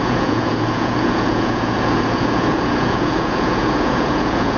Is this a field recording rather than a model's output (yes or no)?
no